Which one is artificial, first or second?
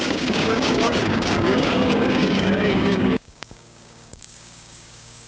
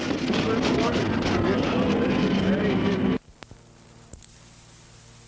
first